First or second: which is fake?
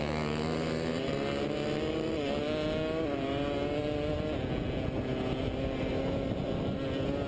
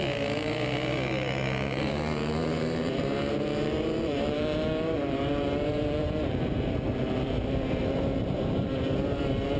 second